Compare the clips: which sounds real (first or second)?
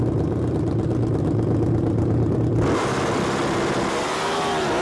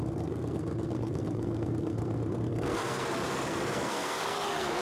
first